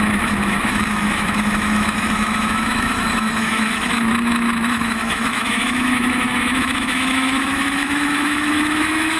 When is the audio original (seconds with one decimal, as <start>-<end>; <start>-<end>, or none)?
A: none